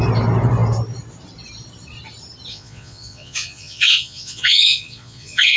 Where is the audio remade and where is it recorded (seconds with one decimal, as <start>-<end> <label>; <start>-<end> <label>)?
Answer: 0.0-2.5 recorded; 2.5-5.6 remade